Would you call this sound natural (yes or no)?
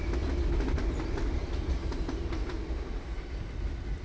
yes